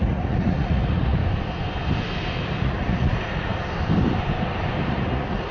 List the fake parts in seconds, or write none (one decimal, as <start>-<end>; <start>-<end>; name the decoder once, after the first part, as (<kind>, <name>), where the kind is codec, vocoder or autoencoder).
0.0-1.2 (vocoder, Vocos); 2.6-3.5; 4.9-5.5